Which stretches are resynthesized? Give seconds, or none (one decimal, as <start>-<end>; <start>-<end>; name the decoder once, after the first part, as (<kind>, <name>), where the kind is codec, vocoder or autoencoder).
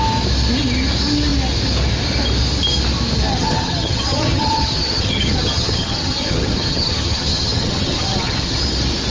3.3-8.5 (vocoder, HiFi-GAN)